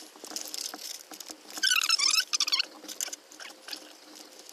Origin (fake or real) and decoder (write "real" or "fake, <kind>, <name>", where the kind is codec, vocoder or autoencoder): real